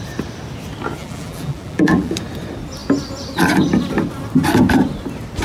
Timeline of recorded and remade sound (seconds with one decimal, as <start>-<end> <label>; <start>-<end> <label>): 0.0-1.0 recorded; 1.0-2.1 remade; 2.1-5.4 recorded